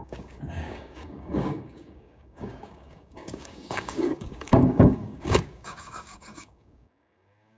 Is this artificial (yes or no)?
yes